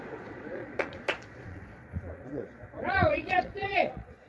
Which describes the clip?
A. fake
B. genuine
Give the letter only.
A